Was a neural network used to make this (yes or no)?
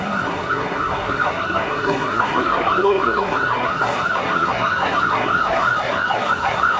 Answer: yes